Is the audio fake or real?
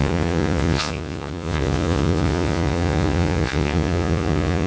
fake